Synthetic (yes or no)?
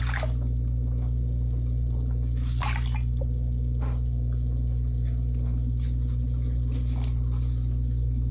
no